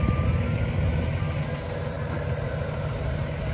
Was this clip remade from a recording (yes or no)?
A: no